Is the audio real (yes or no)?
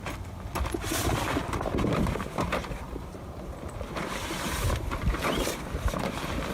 no